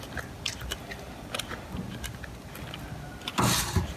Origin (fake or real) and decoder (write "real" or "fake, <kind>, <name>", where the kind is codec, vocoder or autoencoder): real